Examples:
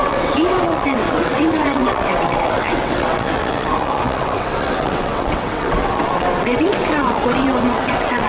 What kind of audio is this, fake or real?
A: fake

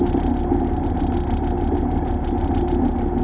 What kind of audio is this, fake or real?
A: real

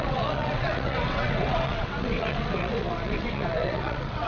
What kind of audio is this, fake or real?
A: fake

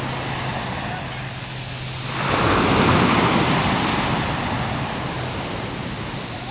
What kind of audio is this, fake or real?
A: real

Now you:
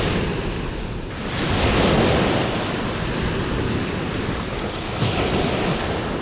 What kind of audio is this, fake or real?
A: real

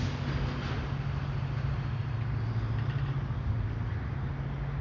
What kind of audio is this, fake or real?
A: real